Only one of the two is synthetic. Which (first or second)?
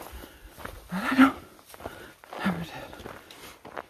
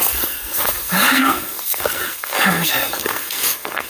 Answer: second